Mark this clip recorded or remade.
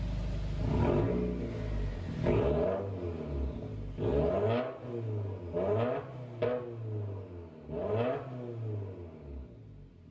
recorded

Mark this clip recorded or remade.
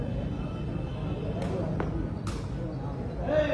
recorded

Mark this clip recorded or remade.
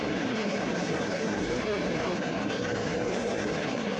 remade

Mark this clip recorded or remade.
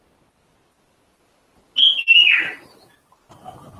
recorded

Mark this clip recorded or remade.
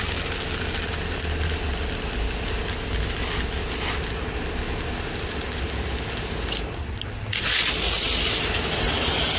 recorded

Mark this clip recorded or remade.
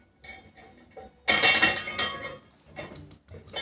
recorded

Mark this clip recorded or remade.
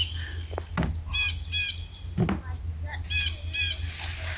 recorded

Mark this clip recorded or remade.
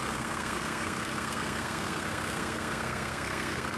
remade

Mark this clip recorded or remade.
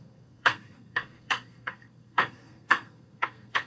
remade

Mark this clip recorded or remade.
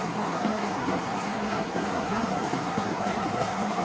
remade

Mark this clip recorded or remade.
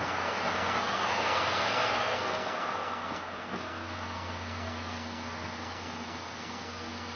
remade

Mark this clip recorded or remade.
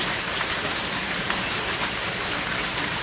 recorded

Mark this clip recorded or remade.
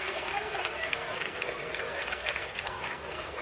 remade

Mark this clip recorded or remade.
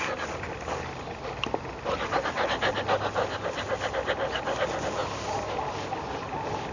recorded